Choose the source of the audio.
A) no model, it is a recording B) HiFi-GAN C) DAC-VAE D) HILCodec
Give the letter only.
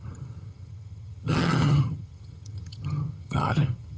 B